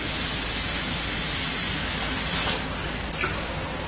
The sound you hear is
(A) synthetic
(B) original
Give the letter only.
B